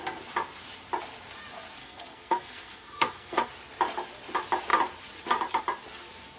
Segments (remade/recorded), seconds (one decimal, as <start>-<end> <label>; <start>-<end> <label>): 0.0-1.8 recorded; 1.8-3.5 remade; 3.5-6.4 recorded